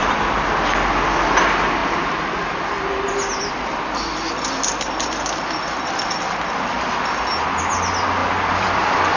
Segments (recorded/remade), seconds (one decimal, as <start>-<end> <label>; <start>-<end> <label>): 0.0-8.2 recorded; 8.2-9.2 remade